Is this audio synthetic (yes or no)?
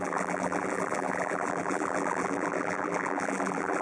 yes